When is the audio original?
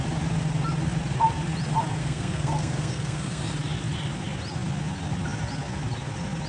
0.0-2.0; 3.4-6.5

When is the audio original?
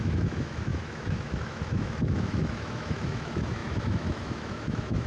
none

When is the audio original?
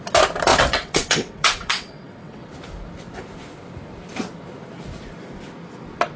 0.0-0.5; 2.5-6.2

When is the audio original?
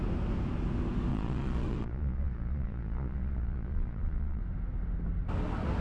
0.0-1.1; 4.4-5.8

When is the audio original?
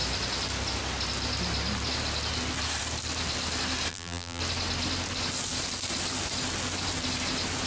0.0-3.9; 4.4-7.7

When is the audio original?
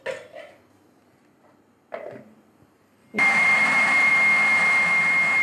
0.0-3.0; 4.1-5.4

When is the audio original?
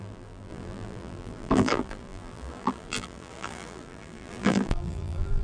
none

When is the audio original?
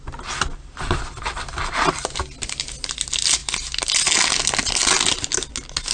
0.0-5.9